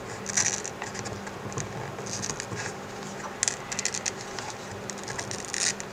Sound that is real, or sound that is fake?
real